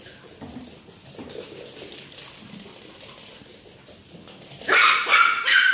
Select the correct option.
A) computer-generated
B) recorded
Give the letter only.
B